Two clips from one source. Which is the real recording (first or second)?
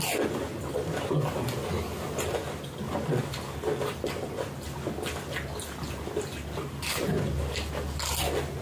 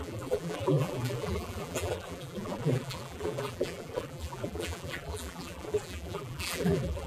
first